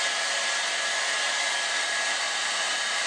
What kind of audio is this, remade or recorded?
recorded